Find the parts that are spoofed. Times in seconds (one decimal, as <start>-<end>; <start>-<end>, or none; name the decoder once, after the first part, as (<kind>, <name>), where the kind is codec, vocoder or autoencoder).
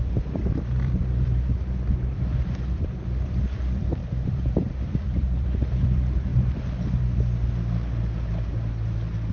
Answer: 0.0-6.3 (vocoder, BigVGAN v2)